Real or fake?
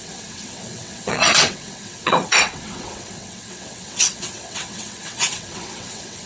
fake